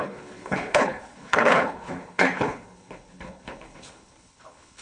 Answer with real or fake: fake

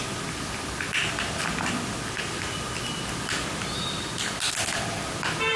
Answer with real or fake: real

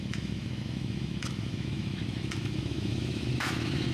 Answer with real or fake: fake